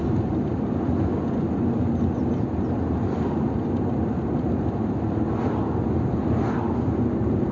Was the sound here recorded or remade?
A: recorded